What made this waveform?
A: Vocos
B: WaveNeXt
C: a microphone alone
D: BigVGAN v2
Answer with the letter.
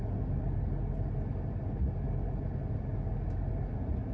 C